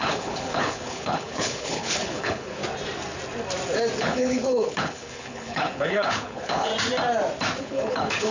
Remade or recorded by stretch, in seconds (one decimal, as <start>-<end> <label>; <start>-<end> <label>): 0.0-2.6 remade; 2.6-4.0 recorded; 4.0-6.7 remade; 6.7-7.6 recorded; 7.6-8.3 remade